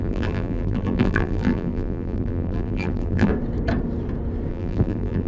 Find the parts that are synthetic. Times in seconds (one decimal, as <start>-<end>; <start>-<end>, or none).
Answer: 0.0-3.3; 4.5-5.3